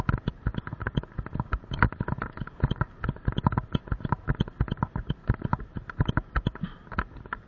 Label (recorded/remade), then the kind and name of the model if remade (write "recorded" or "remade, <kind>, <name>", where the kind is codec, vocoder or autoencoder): recorded